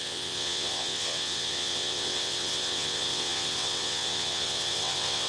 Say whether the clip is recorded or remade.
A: remade